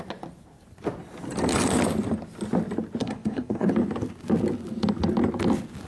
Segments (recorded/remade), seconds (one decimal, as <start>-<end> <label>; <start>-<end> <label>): 0.0-3.0 recorded; 3.0-3.7 remade; 3.7-5.9 recorded